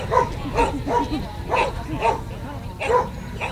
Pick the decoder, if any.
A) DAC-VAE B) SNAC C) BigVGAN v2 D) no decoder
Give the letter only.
D